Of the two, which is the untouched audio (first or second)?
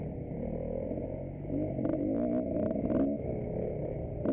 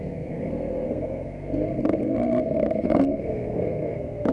first